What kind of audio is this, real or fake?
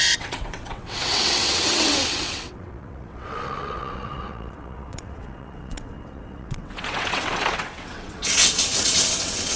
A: fake